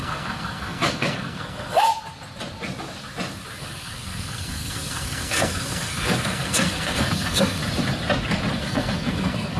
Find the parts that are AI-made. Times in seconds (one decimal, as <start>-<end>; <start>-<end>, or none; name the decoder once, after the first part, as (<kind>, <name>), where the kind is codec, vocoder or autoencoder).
0.0-1.9 (codec, SNAC); 3.6-7.6; 8.6-9.6